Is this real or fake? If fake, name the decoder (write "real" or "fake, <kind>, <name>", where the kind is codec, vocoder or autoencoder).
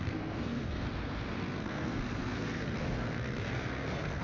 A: fake, codec, SNAC